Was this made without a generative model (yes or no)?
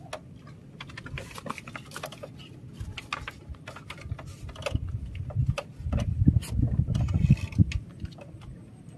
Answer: yes